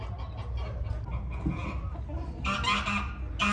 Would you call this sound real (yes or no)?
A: yes